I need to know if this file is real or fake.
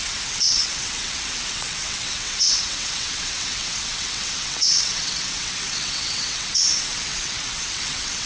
fake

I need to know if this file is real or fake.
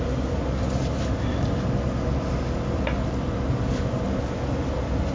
real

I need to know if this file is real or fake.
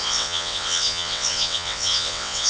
fake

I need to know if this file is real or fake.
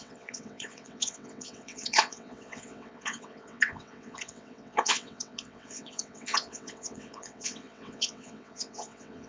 fake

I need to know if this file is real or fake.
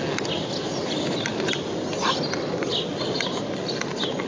real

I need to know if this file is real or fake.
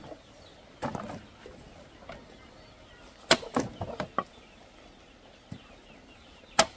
real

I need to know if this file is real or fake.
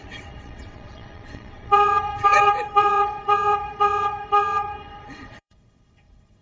fake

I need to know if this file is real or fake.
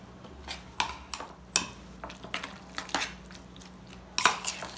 real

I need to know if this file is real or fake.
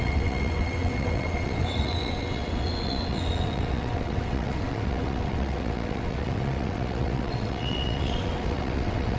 fake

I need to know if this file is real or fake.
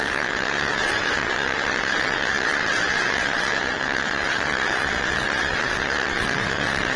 fake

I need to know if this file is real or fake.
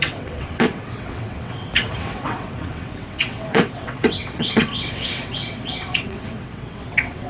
fake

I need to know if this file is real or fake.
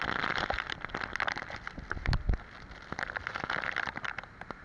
real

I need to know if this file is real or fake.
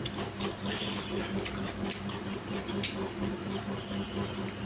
real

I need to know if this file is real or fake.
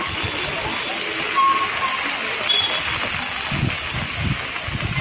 real